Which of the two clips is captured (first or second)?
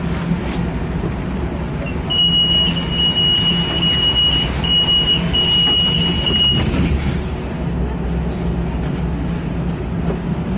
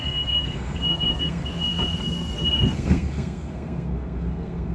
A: first